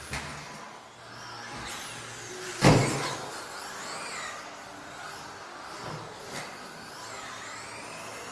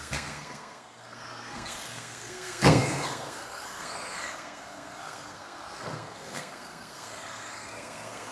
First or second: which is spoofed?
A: second